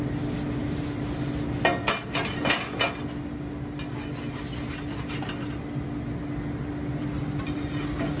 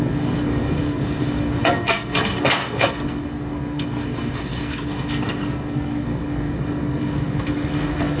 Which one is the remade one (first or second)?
second